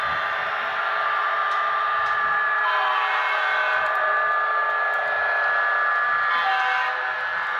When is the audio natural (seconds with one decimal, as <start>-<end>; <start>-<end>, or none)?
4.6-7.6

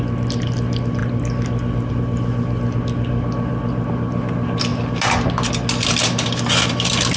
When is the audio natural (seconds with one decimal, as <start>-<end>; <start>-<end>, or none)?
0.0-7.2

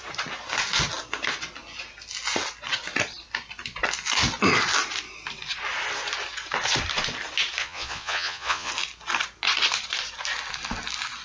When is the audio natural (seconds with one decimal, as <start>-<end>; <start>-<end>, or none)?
0.0-7.6; 8.7-11.2

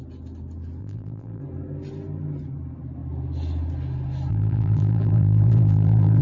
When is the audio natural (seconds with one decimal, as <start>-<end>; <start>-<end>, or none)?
0.0-0.8; 1.4-4.3

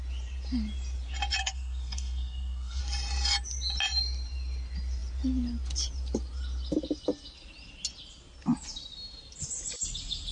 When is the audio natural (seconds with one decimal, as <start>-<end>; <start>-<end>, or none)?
0.0-1.4; 2.8-10.3

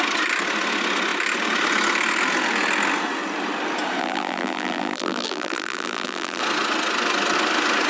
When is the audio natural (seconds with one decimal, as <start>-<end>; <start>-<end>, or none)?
0.0-4.0; 6.4-7.9

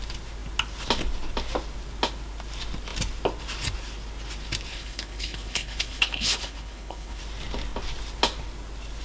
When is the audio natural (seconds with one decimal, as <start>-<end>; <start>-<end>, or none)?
0.0-4.7; 7.2-9.0